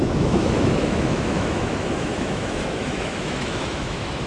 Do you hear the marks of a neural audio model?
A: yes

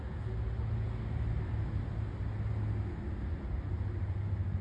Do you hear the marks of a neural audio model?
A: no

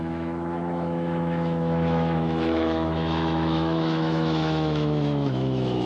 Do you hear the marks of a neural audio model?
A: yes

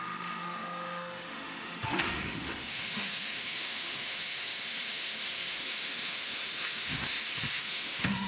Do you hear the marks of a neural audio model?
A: yes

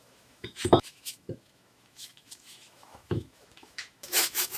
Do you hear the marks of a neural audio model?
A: yes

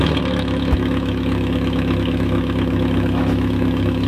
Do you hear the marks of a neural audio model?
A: yes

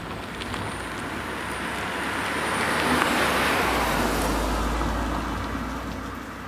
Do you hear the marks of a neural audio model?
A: no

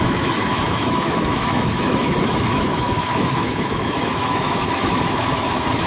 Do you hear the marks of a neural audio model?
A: yes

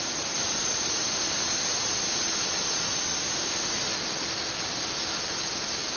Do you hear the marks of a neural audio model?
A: no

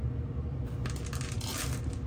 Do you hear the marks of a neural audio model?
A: no